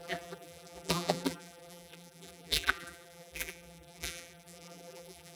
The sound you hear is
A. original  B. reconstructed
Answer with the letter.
B